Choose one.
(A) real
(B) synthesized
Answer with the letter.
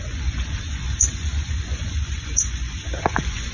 B